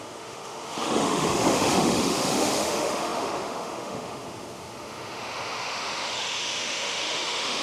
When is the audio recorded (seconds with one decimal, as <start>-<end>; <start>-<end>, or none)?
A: none